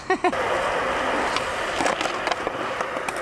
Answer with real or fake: real